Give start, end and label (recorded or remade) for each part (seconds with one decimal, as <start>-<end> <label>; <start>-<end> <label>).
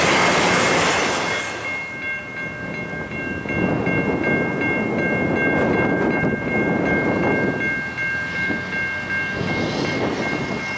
0.0-10.8 recorded